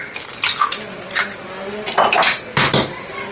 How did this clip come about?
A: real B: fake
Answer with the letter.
A